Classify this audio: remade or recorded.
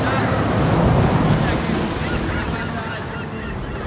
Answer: recorded